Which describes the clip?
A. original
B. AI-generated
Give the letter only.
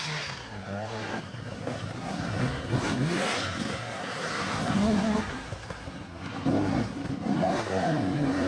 B